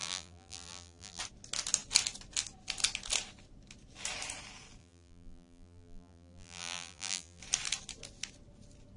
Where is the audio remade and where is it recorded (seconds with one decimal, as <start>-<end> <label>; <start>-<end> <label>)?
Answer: 0.0-1.2 remade; 1.2-4.8 recorded; 4.8-7.4 remade; 7.4-9.0 recorded